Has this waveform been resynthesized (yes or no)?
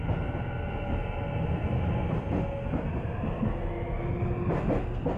no